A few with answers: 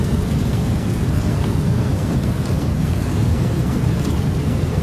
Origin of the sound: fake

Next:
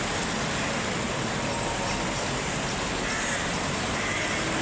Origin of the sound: real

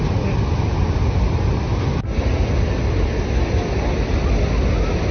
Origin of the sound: real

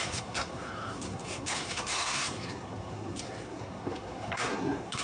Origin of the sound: fake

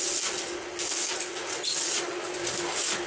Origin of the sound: real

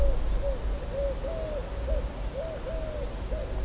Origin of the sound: real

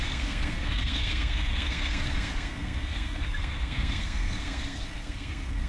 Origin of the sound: fake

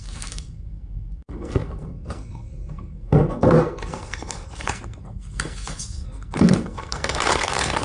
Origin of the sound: fake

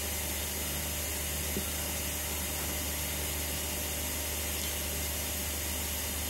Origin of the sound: real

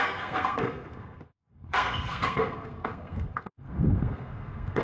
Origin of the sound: fake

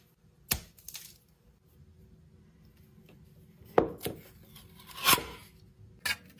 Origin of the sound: real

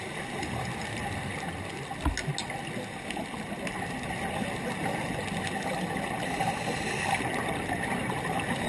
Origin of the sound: real